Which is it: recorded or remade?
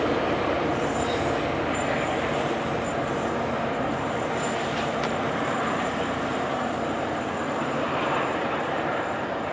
remade